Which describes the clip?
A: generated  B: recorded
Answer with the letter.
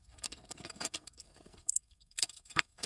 A